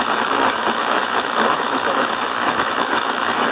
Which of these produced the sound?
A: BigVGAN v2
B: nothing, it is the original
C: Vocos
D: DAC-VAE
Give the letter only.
D